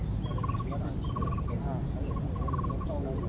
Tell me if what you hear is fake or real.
real